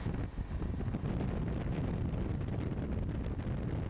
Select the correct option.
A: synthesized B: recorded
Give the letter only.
B